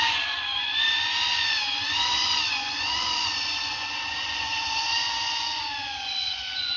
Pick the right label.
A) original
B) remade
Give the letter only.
B